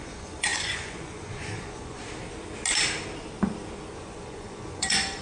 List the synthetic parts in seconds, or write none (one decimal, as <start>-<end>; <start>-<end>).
0.0-2.0; 3.9-5.2